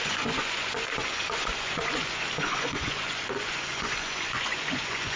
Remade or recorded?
remade